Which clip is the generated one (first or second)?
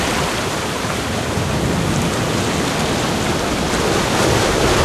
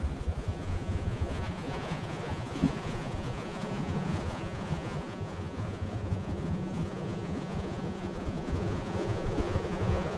second